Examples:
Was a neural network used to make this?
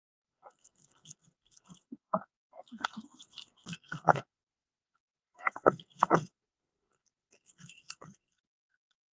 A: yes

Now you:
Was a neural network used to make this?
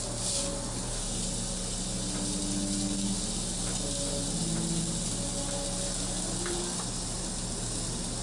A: no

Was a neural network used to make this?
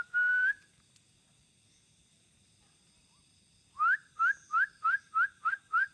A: no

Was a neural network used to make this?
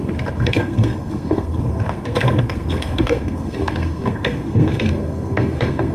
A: yes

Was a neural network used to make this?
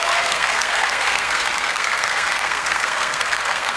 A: yes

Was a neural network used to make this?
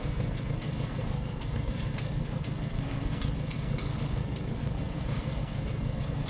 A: yes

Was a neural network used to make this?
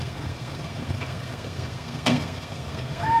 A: yes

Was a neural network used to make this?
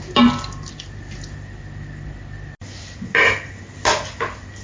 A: no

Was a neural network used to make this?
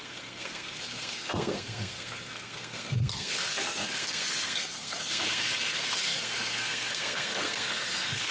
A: yes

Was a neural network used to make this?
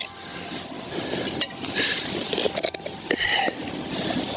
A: no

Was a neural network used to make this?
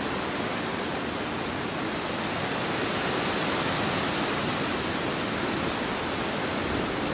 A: no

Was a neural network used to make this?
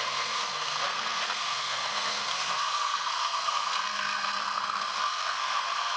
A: yes